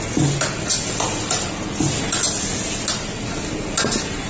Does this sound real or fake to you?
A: real